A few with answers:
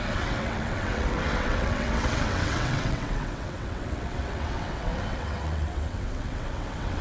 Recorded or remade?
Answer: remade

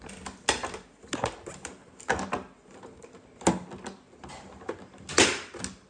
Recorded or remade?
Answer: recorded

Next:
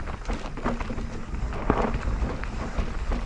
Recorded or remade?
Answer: recorded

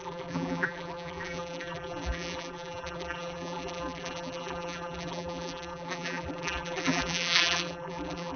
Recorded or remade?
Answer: remade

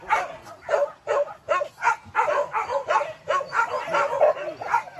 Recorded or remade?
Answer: recorded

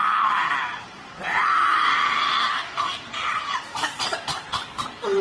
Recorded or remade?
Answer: remade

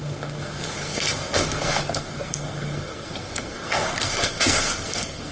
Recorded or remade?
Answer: remade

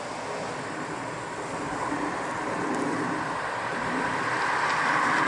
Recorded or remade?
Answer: recorded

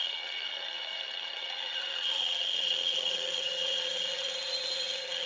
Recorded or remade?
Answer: remade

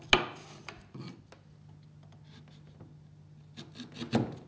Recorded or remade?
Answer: recorded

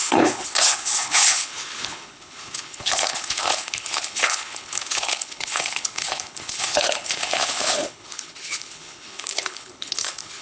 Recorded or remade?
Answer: remade